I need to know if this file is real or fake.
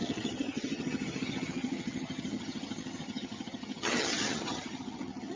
fake